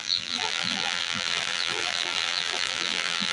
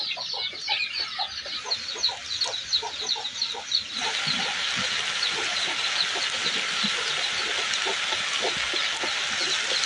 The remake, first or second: first